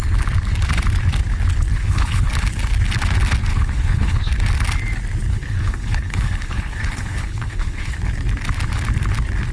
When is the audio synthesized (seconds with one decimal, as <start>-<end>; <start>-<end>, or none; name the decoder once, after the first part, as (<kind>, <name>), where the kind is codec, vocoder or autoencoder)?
1.7-2.3 (codec, HILCodec); 3.5-4.3; 5.3-8.0